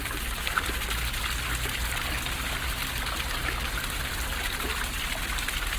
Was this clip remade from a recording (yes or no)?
no